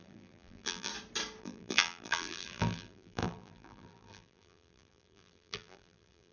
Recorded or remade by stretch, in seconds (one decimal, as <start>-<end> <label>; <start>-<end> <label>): 0.0-0.9 remade; 0.9-1.4 recorded; 1.4-6.3 remade